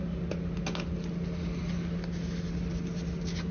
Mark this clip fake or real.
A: real